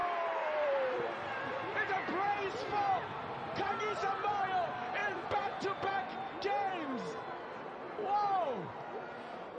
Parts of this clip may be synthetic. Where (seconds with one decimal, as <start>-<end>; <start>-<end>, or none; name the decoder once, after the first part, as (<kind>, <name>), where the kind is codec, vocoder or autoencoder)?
0.0-1.9 (vocoder, BigVGAN v2); 5.0-5.9